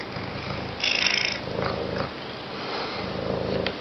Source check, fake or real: real